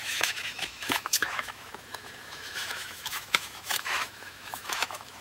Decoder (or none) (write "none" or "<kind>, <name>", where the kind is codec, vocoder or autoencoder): autoencoder, DAC-VAE